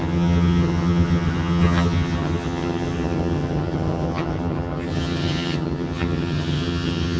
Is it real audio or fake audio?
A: fake